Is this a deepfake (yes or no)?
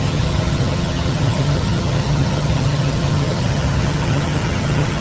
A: yes